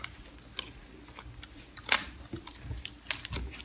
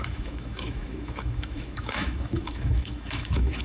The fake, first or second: second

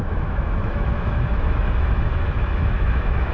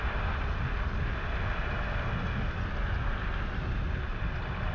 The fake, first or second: first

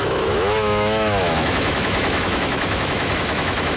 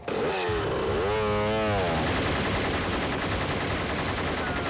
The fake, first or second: first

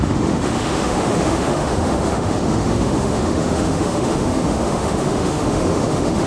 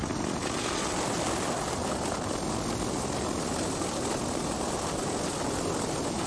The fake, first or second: first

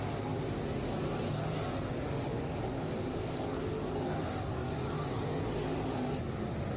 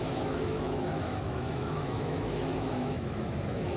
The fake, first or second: second